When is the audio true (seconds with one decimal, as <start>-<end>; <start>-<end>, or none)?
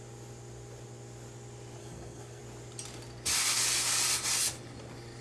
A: 0.0-1.8; 2.4-5.2